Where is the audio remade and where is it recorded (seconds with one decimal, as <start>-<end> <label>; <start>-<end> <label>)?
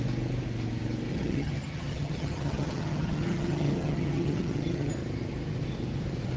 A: 0.0-1.1 recorded; 1.1-4.9 remade; 4.9-6.4 recorded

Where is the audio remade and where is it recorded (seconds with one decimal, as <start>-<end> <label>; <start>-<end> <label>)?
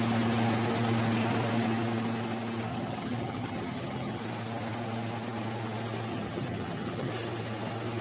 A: 0.0-2.7 recorded; 2.7-4.2 remade; 4.2-6.1 recorded; 6.1-7.1 remade; 7.1-8.0 recorded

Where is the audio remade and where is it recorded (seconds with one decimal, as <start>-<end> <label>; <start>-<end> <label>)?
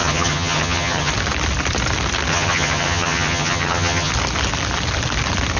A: 0.0-1.1 remade; 1.1-2.3 recorded; 2.3-4.1 remade; 4.1-5.6 recorded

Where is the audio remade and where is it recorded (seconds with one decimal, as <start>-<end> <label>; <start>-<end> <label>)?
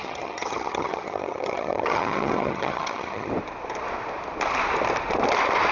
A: 0.0-3.3 remade; 3.3-5.7 recorded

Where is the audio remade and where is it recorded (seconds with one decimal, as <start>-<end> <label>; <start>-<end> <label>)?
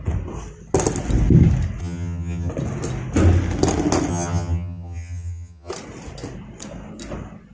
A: 0.0-1.8 recorded; 1.8-2.5 remade; 2.5-4.1 recorded; 4.1-5.7 remade; 5.7-7.5 recorded